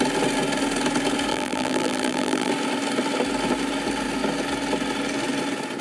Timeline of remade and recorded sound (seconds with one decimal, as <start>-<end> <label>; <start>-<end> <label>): 0.0-1.3 recorded; 1.3-2.5 remade; 2.5-5.8 recorded